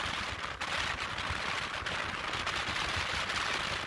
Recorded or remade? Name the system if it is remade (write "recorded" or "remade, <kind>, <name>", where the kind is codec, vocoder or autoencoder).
recorded